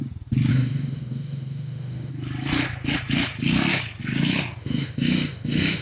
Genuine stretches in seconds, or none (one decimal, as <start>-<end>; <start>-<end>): 0.0-0.5; 2.1-4.6